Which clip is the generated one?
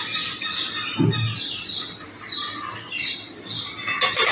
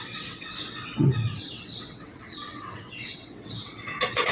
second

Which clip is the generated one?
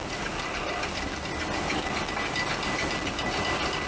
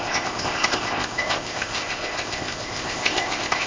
second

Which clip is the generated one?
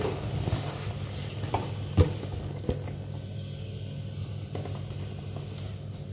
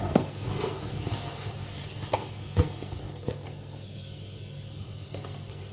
second